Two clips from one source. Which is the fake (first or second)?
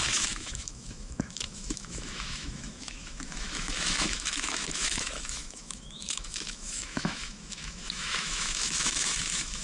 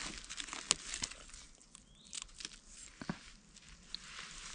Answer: first